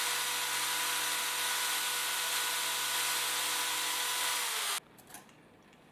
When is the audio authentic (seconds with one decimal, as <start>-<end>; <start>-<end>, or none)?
0.0-5.9